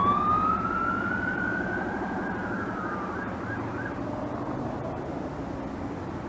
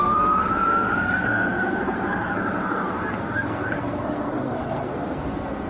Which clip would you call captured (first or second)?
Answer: first